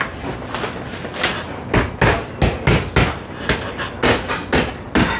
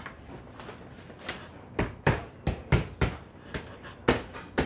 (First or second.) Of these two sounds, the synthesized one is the second